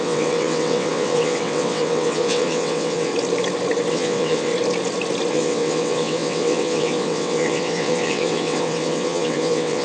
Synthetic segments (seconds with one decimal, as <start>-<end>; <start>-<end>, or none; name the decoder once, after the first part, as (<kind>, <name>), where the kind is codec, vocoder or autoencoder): 0.0-3.1 (vocoder, WaveNeXt); 3.9-4.5; 5.3-9.8